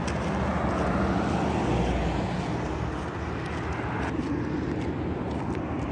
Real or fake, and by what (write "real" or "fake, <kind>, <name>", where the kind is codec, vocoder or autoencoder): real